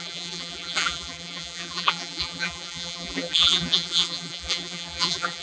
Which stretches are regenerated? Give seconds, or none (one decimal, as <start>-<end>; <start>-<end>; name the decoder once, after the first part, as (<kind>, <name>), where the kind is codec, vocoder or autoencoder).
0.0-5.4 (vocoder, BigVGAN v2)